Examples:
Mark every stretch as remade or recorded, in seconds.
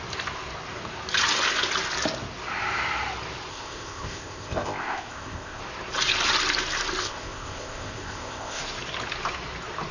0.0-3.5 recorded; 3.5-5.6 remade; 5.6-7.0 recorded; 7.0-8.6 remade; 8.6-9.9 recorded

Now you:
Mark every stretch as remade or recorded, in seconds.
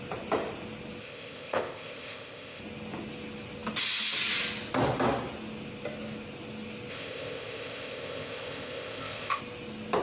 0.0-1.0 recorded; 1.0-2.6 remade; 2.6-6.9 recorded; 6.9-9.4 remade; 9.4-10.0 recorded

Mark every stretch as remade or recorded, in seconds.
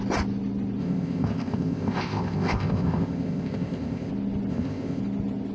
0.0-0.8 recorded; 0.8-4.1 remade; 4.1-4.5 recorded; 4.5-5.0 remade; 5.0-5.5 recorded